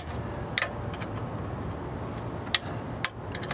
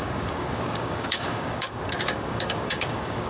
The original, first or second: first